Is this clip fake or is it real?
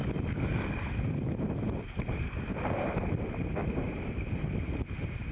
real